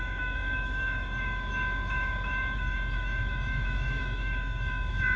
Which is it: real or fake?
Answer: fake